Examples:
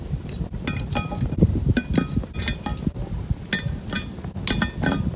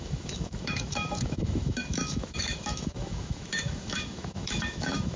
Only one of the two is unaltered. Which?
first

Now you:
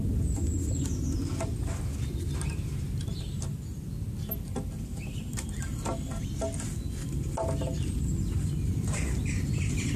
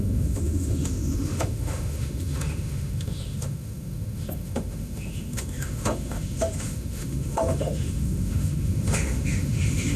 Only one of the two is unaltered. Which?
first